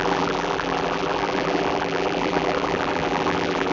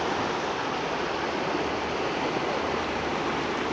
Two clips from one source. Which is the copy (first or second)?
first